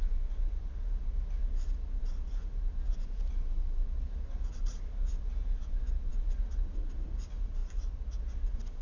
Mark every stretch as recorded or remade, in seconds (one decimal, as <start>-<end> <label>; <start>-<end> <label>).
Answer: 0.0-8.8 recorded